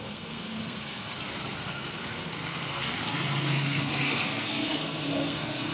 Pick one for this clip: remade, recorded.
remade